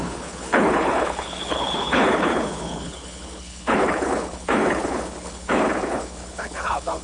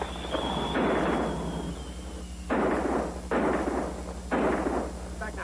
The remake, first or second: first